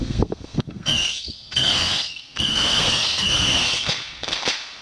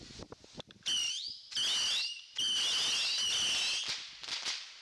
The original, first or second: second